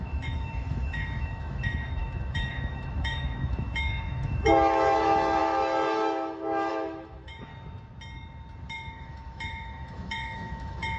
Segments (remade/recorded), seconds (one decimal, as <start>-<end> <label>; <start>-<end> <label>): 0.0-7.5 remade; 7.5-8.7 recorded; 8.7-11.0 remade